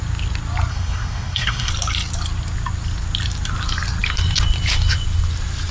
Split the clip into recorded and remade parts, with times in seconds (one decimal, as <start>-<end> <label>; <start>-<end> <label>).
0.0-0.7 recorded; 0.7-1.7 remade; 1.7-5.7 recorded

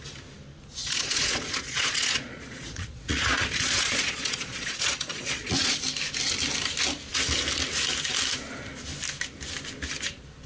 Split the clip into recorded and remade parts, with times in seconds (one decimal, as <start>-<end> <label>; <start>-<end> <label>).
0.0-0.8 recorded; 0.8-5.8 remade; 5.8-10.5 recorded

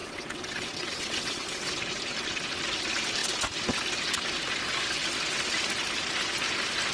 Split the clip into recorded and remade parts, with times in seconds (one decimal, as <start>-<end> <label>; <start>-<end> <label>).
0.0-1.7 remade; 1.7-6.9 recorded